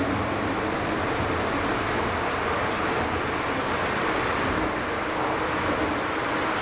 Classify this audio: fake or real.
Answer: real